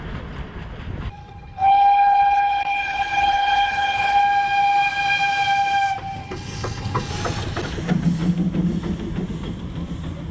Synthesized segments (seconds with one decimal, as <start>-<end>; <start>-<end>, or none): 1.2-4.2; 6.2-7.1